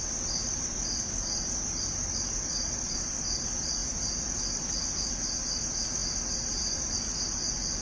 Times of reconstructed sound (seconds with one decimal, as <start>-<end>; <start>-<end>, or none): none